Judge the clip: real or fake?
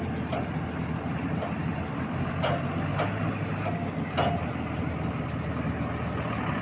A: real